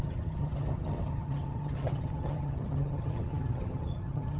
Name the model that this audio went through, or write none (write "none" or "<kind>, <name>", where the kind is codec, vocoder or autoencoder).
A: vocoder, HiFi-GAN